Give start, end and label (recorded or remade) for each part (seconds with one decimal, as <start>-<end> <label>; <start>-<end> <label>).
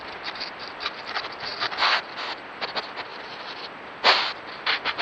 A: 0.0-1.5 remade; 1.5-2.4 recorded; 2.4-3.1 remade; 3.1-4.5 recorded; 4.5-5.0 remade